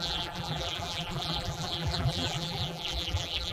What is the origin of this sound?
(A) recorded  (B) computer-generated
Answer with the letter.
B